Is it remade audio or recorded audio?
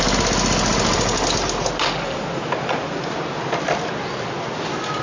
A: recorded